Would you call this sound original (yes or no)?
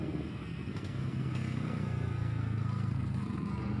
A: no